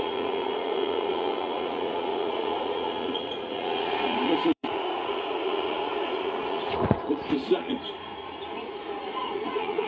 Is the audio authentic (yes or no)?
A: no